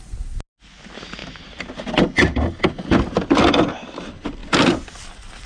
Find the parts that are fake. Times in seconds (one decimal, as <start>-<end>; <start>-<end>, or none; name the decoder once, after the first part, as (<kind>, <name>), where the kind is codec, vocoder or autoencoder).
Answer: 4.4-5.1 (vocoder, BigVGAN v2)